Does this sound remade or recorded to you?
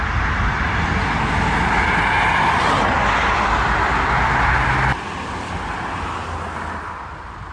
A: recorded